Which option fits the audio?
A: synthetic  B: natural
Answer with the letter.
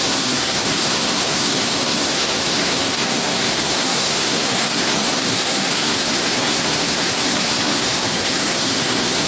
A